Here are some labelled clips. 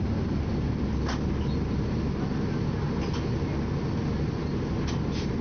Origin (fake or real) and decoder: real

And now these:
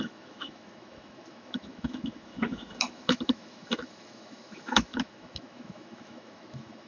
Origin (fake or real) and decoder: fake, autoencoder, DAC-VAE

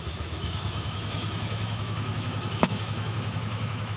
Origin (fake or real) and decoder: fake, autoencoder, DAC-VAE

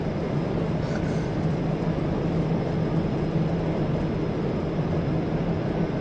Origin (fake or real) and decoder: real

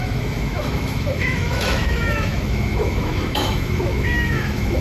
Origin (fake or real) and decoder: fake, autoencoder, DAC-VAE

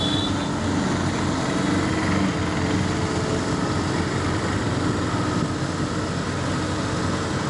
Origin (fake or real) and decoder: real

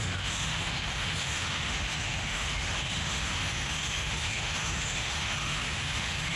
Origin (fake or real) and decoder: fake, autoencoder, DAC-VAE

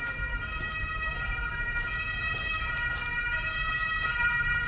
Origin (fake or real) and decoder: real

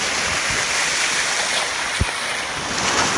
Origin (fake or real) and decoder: real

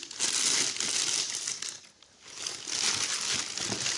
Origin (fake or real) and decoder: real